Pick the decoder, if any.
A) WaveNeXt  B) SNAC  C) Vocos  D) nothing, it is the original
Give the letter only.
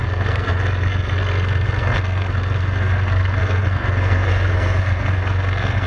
B